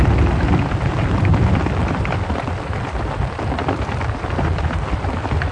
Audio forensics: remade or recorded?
recorded